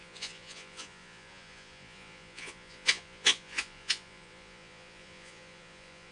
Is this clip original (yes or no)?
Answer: no